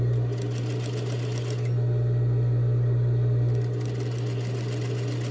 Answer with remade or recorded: recorded